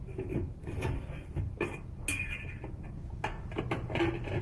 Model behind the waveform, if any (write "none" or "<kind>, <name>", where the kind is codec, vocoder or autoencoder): none